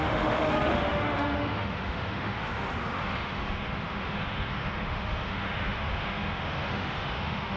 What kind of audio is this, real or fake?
fake